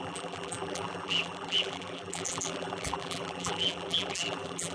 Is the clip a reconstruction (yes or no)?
yes